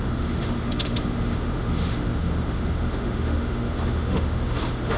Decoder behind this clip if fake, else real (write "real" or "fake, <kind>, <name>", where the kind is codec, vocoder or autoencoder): fake, autoencoder, DAC-VAE